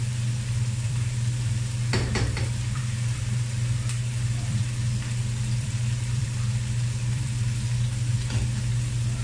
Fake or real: fake